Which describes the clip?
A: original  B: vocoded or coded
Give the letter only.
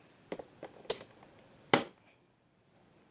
A